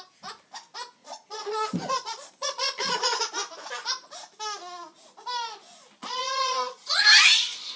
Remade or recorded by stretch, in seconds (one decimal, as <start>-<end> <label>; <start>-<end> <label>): 0.0-1.0 recorded; 1.0-3.3 remade; 3.3-6.0 recorded; 6.0-7.0 remade; 7.0-7.8 recorded